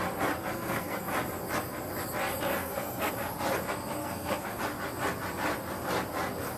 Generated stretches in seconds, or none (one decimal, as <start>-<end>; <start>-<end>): 0.4-1.1; 2.6-3.1; 4.0-4.6